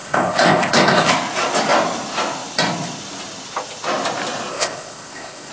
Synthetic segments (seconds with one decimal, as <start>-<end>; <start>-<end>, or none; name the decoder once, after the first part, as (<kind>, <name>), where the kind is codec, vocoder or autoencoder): 0.0-1.1 (codec, ZipCodec); 4.5-5.5